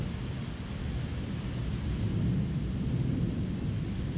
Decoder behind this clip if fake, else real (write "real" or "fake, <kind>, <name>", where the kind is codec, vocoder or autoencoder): real